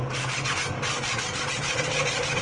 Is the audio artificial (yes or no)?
no